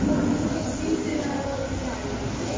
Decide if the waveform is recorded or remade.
recorded